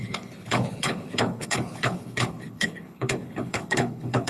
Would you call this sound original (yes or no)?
no